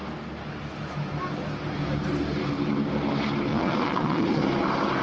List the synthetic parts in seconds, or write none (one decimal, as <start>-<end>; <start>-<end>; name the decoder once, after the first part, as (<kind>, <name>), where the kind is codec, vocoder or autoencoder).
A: 3.5-4.4 (vocoder, Vocos)